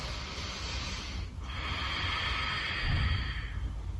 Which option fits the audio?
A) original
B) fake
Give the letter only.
A